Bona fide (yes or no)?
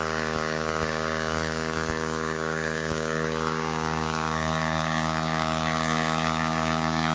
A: no